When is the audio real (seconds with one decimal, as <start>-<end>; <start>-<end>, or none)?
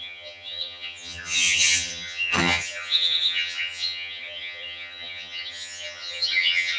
none